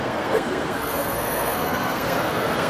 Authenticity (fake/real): fake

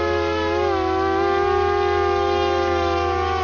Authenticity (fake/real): real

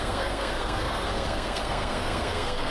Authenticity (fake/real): fake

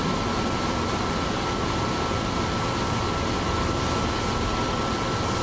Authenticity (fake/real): real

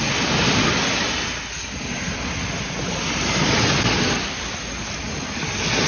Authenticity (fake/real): real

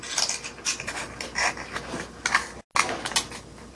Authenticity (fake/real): real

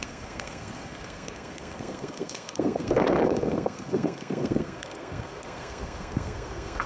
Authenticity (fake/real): fake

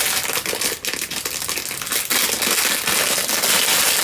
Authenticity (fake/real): real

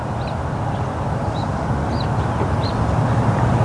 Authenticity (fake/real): real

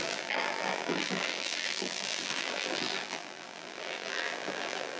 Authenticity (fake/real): fake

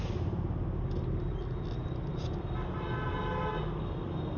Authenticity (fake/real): real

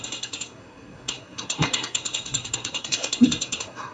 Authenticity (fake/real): fake